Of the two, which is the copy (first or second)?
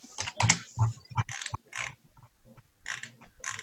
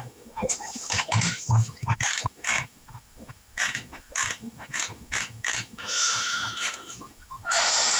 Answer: second